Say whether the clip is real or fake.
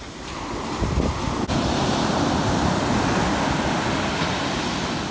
real